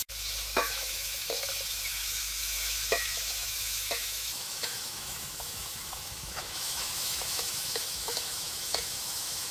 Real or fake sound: fake